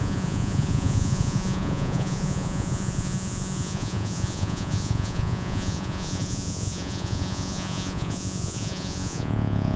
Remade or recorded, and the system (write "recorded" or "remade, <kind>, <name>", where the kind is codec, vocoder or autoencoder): remade, vocoder, Vocos